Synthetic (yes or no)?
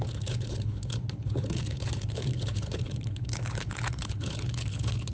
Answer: yes